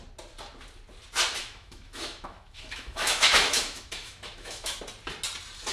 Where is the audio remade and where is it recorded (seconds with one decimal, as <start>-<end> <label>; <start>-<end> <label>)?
0.0-1.4 recorded; 1.4-4.8 remade; 4.8-5.7 recorded